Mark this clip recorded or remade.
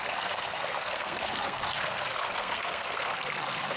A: remade